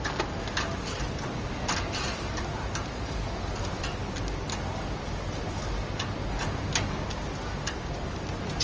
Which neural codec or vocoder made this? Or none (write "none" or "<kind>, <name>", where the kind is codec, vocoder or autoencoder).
none